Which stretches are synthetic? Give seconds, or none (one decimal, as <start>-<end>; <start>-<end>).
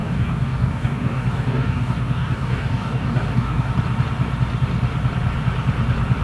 0.0-3.7